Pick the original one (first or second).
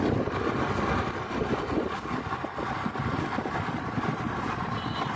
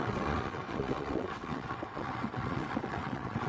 first